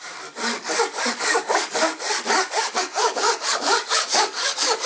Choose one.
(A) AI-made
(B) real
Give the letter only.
A